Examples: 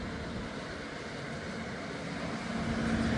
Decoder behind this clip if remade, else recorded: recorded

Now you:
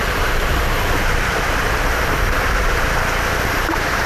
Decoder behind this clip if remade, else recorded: recorded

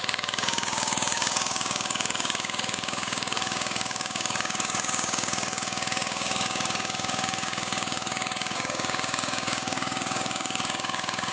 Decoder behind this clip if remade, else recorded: remade, codec, DAC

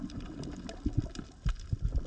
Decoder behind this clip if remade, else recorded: recorded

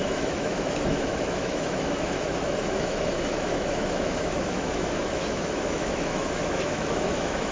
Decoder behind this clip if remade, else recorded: remade, autoencoder, DAC-VAE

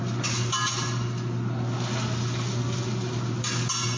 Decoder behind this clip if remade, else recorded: recorded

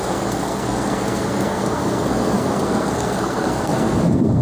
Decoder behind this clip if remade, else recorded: remade, codec, SNAC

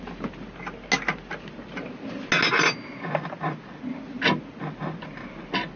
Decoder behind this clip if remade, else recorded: recorded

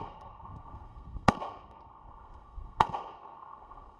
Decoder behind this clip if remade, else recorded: remade, codec, SNAC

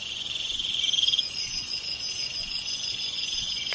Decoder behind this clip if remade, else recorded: remade, vocoder, Vocos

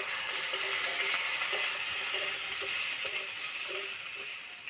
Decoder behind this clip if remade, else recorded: recorded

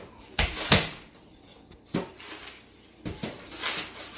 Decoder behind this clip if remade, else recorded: recorded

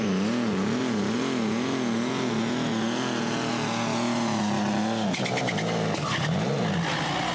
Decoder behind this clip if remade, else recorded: recorded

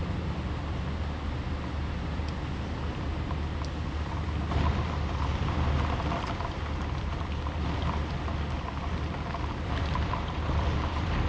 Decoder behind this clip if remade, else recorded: remade, vocoder, BigVGAN v2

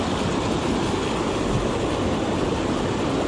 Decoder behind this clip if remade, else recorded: recorded